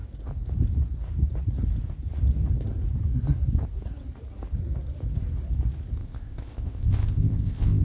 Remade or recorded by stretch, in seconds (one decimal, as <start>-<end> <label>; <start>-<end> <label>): 0.0-6.0 recorded; 6.0-7.8 remade